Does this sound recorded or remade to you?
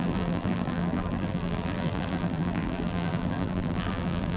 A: remade